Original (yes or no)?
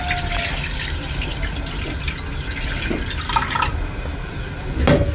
yes